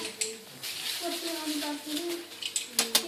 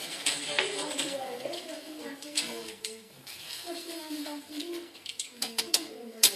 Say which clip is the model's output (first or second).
second